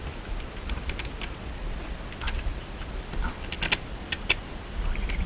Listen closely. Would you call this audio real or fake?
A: real